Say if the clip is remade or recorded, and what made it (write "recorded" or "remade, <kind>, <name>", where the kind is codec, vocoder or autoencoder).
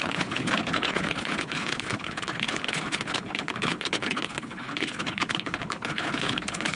remade, codec, HILCodec